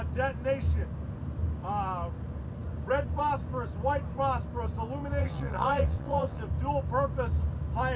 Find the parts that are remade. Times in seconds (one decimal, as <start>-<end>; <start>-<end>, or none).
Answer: 5.2-6.4